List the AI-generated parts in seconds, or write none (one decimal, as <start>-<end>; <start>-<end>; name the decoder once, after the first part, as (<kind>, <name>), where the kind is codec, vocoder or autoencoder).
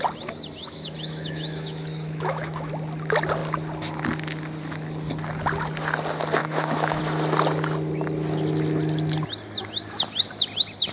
0.6-2.7 (autoencoder, DAC-VAE); 6.4-7.0